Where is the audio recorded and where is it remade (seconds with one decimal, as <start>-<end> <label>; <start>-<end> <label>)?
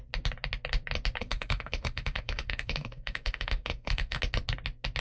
0.0-1.2 recorded; 1.2-4.2 remade; 4.2-5.0 recorded